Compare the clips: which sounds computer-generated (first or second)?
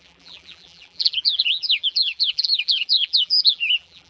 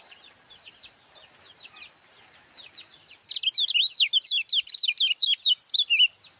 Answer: first